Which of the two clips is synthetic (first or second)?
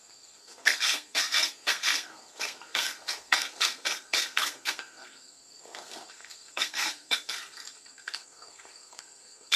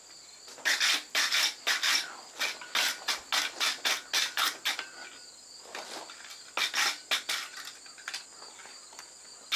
first